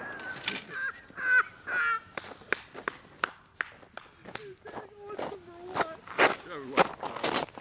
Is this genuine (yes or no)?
yes